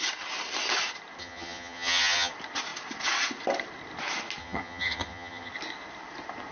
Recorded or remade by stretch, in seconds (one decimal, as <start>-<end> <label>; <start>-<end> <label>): 0.0-1.2 recorded; 1.2-2.3 remade; 2.3-4.4 recorded; 4.4-5.5 remade; 5.5-6.5 recorded